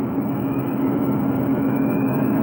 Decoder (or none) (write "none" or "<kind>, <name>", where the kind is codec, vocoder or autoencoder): autoencoder, DAC-VAE